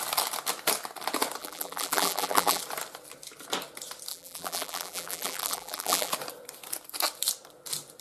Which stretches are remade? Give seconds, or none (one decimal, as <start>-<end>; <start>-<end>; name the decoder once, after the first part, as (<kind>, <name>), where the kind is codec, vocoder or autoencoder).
1.4-2.6 (vocoder, BigVGAN v2); 4.1-6.1